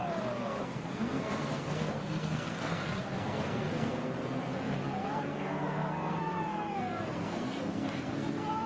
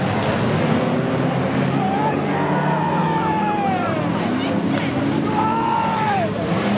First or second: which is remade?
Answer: first